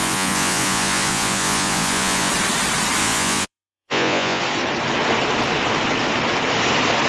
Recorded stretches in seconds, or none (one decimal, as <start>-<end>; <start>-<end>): 2.3-3.0; 4.4-7.1